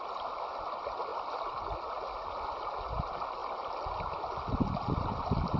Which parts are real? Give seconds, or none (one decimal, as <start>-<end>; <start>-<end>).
0.0-5.6